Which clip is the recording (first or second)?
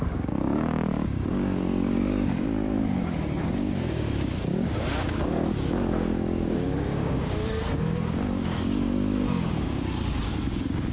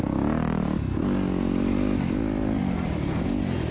second